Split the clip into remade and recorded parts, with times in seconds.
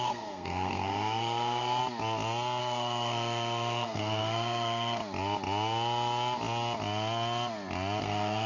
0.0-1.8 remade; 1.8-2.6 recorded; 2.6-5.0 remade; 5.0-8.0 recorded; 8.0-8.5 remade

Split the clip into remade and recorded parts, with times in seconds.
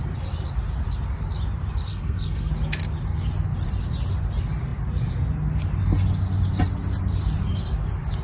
0.0-1.9 recorded; 1.9-2.5 remade; 2.5-8.2 recorded